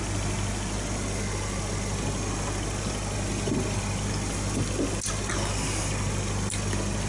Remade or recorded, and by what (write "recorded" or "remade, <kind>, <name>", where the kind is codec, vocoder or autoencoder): recorded